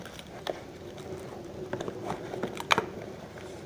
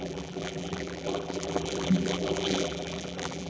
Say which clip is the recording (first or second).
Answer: first